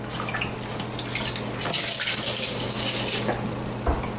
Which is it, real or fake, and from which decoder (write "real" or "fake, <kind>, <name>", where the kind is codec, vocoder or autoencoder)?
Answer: real